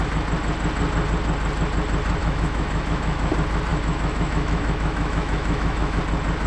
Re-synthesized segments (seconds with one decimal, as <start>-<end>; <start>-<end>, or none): 2.2-3.3; 3.7-6.0